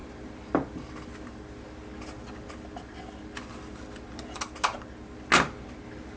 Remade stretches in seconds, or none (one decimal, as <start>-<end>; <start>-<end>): none